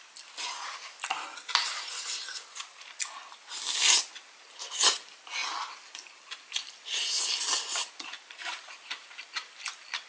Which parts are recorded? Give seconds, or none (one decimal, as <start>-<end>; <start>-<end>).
0.0-10.1